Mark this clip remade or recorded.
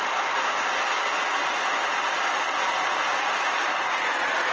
recorded